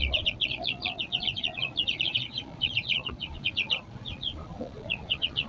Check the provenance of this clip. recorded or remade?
remade